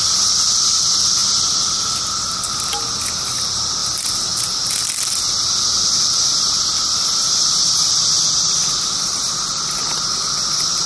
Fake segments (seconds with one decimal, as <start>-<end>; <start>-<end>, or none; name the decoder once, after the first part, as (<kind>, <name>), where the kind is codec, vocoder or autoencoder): none

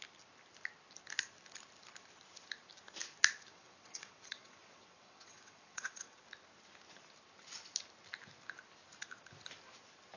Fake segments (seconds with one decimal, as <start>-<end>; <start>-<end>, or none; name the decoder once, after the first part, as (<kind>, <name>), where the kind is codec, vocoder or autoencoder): 3.5-6.2 (vocoder, WaveNeXt)

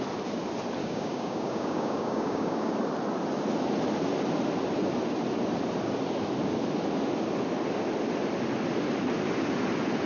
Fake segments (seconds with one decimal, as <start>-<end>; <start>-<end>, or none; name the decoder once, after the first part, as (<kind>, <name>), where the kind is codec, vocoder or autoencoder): 0.8-2.7 (codec, DAC)

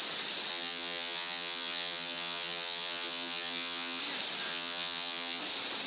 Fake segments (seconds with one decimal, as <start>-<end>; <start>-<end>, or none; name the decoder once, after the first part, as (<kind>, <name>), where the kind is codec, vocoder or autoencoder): 0.5-4.0 (vocoder, HiFi-GAN); 4.5-5.4

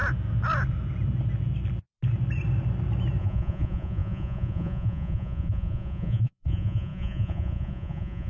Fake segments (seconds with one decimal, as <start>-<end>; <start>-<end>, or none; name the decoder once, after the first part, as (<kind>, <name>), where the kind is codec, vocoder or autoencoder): 3.2-8.3 (vocoder, Vocos)

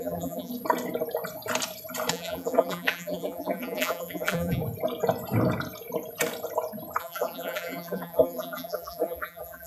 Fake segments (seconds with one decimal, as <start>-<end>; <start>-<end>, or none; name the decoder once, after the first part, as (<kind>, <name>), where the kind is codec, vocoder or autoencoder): 0.0-0.5 (vocoder, BigVGAN v2); 2.1-4.6; 7.0-9.7

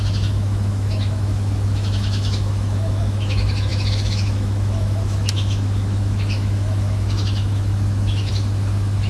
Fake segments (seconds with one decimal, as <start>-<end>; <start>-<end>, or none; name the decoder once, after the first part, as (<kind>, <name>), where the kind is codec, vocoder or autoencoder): 0.0-9.1 (autoencoder, DAC-VAE)

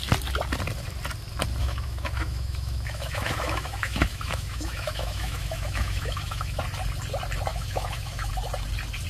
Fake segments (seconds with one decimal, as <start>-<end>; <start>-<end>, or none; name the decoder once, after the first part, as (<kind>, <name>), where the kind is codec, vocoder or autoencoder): 1.6-6.6 (autoencoder, DAC-VAE); 7.5-8.3